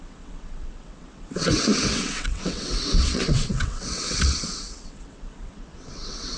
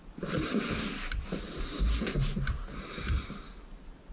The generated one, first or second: first